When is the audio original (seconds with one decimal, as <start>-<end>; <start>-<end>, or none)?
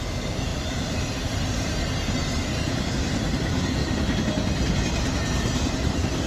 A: 0.0-6.3